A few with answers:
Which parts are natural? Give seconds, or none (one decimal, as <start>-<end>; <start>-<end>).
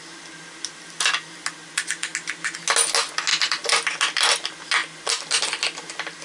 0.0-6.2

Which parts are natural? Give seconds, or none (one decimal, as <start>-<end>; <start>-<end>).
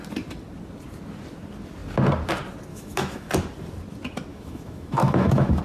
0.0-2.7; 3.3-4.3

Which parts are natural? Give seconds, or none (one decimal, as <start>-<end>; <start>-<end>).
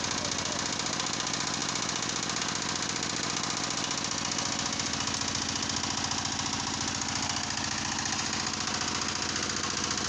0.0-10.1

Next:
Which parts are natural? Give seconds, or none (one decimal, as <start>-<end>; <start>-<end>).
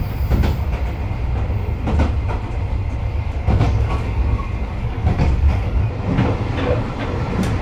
0.0-3.0; 5.9-7.6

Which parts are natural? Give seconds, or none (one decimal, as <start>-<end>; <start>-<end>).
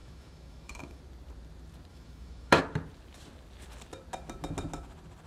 1.0-1.9; 2.6-5.3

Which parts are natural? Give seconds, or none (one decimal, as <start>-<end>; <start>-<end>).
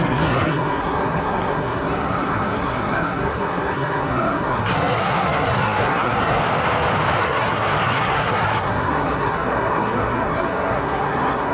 6.4-7.2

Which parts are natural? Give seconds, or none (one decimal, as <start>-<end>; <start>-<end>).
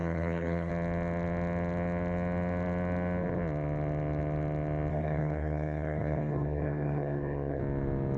0.7-4.9; 7.6-8.2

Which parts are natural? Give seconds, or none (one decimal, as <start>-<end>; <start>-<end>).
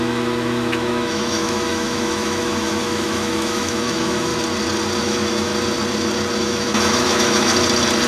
4.3-5.0; 5.5-6.4; 7.5-8.1